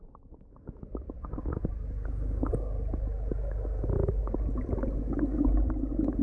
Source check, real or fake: real